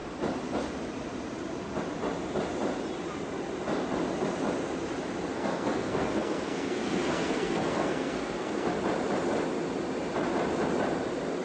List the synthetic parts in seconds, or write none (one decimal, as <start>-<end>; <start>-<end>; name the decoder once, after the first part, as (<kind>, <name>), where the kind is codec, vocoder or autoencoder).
5.3-8.7 (codec, SNAC)